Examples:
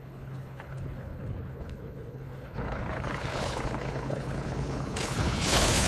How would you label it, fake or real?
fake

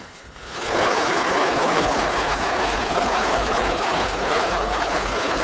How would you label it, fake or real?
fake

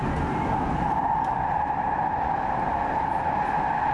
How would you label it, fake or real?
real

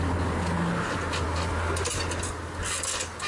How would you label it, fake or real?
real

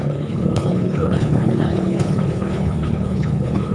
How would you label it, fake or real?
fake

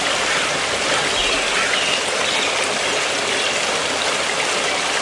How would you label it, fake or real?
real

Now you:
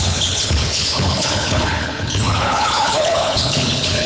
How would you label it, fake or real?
fake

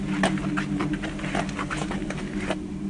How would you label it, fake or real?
real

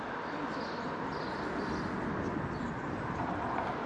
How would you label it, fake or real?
real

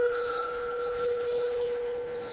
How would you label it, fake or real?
fake